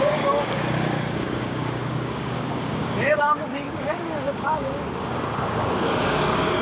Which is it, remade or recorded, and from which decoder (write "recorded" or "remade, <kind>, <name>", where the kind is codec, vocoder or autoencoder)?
remade, codec, DAC